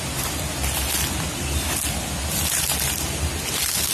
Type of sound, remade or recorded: recorded